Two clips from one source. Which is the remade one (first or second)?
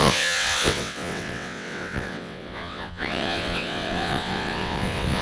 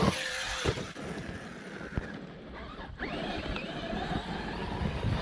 first